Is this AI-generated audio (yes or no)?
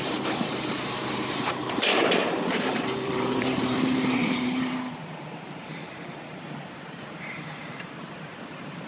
yes